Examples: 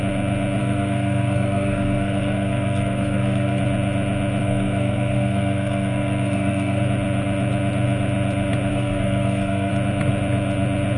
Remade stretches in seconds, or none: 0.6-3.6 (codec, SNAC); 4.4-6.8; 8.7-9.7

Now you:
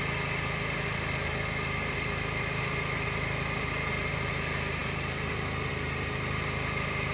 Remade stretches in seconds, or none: none

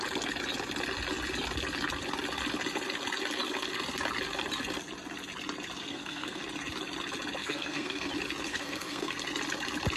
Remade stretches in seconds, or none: 5.8-6.4 (codec, SNAC); 7.4-8.1; 8.5-9.1

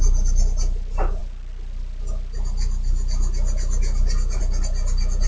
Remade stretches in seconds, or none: none

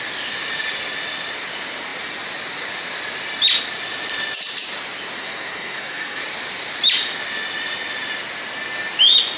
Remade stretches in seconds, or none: 5.2-6.2 (codec, SNAC)

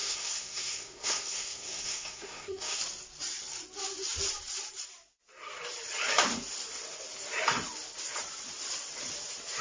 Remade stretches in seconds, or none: 0.0-2.8 (codec, SNAC)

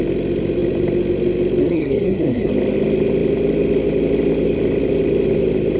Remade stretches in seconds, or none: 1.6-2.5 (codec, SNAC)